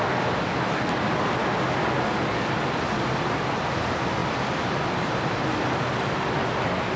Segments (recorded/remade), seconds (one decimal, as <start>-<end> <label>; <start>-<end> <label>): 0.0-4.2 recorded; 4.2-6.4 remade; 6.4-7.0 recorded